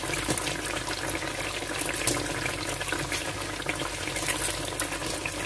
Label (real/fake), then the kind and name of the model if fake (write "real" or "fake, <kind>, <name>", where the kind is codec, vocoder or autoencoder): real